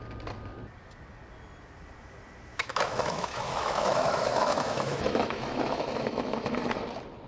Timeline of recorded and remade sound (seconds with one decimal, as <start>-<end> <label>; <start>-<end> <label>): 0.0-2.5 recorded; 2.5-6.8 remade; 6.8-7.3 recorded